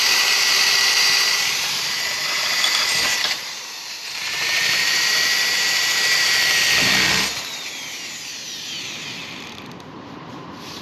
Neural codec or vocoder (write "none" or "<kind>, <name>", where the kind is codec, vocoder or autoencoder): vocoder, BigVGAN v2